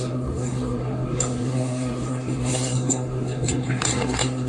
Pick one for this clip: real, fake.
fake